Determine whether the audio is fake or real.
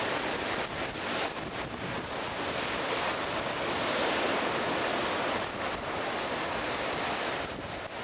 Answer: real